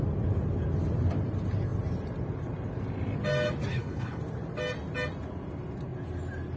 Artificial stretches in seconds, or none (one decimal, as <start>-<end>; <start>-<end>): 3.7-4.2